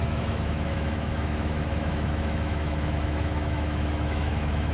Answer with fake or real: fake